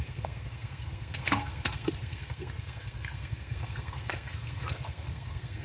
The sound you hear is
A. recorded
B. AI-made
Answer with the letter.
B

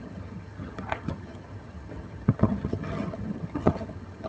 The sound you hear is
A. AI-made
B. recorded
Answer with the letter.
A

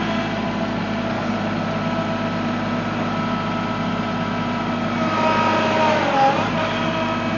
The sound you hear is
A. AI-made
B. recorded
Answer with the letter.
B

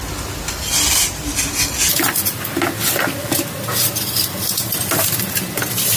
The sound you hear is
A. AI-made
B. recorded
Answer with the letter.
B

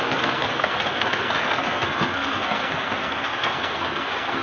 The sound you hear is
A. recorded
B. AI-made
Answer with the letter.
B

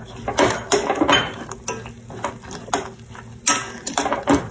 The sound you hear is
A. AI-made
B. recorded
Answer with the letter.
B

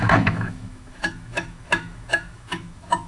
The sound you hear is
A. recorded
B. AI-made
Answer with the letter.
B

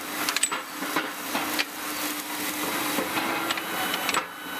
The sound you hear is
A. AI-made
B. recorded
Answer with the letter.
B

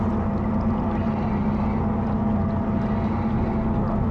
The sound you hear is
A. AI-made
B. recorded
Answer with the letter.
B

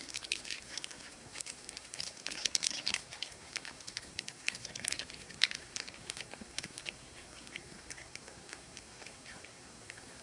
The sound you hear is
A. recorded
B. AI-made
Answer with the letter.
B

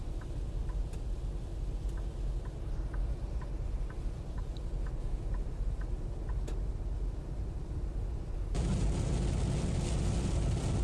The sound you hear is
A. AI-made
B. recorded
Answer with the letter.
B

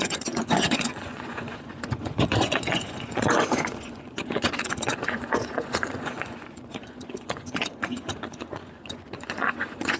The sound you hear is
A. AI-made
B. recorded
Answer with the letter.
A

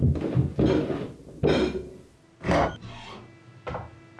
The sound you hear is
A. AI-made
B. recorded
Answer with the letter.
B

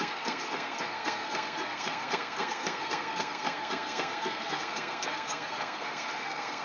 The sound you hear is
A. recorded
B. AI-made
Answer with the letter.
B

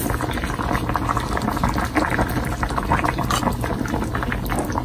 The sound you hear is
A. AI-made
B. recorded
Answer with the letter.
B